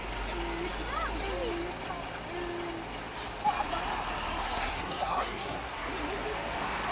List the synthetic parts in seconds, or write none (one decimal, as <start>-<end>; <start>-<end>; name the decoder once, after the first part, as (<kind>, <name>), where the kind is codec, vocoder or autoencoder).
4.4-5.9 (codec, SNAC)